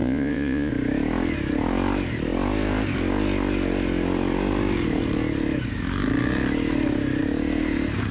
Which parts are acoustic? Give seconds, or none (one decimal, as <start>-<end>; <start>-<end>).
0.7-8.1